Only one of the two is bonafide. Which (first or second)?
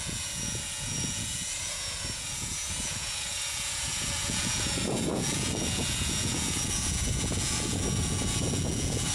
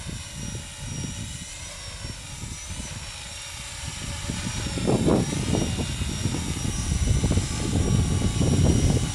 second